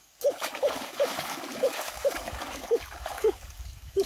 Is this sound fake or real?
fake